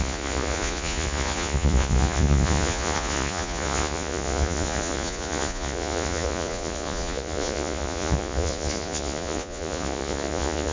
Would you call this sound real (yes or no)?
no